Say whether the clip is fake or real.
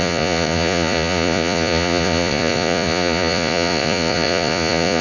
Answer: fake